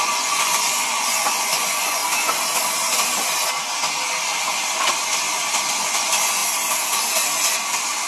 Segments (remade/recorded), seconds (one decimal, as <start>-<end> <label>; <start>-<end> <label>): 0.0-2.0 remade; 2.0-5.7 recorded; 5.7-6.4 remade; 6.4-8.1 recorded